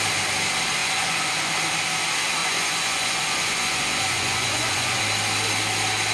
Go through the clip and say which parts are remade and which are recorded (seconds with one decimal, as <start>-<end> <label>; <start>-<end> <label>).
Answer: 0.0-0.8 recorded; 0.8-1.5 remade; 1.5-2.4 recorded; 2.4-5.0 remade; 5.0-6.1 recorded